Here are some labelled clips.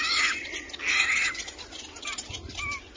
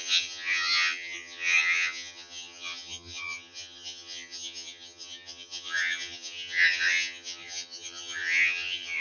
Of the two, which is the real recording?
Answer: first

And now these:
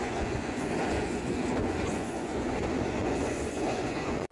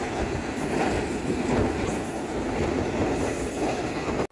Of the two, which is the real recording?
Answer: second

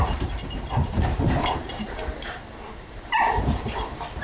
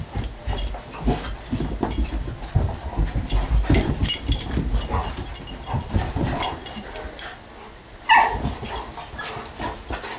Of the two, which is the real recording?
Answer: second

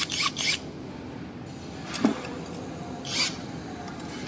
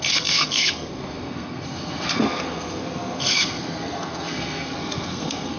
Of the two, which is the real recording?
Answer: first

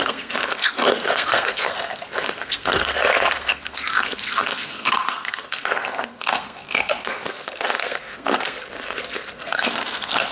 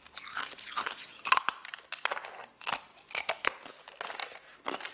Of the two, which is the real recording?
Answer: second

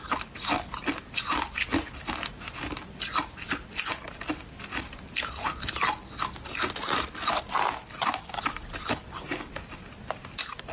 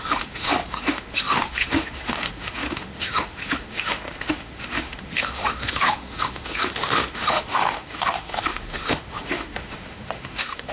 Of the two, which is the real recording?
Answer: first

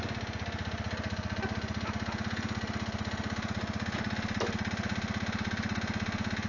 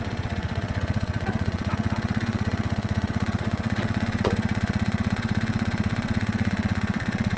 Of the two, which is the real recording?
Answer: first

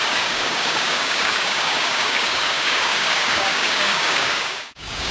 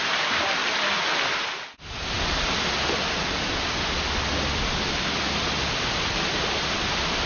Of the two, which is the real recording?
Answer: second